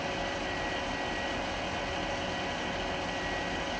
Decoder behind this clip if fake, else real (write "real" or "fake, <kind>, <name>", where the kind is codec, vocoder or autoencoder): real